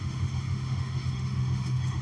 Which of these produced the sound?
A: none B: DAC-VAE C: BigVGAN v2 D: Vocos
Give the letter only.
B